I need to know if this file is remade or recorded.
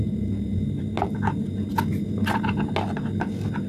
recorded